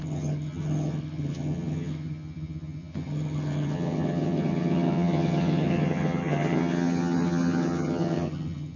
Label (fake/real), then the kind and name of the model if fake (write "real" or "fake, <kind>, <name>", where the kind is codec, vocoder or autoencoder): fake, vocoder, HiFi-GAN